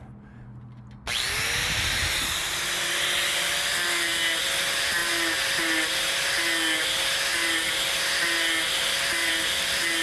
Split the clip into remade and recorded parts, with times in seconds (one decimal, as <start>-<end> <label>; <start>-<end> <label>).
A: 0.0-10.0 recorded